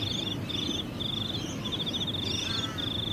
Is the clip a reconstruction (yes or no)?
no